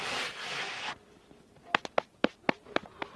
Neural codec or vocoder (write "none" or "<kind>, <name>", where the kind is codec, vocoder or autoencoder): none